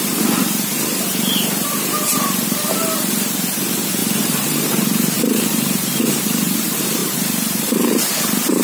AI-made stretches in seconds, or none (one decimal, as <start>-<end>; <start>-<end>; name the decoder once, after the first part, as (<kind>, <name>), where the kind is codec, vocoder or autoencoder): 0.0-8.6 (vocoder, BigVGAN v2)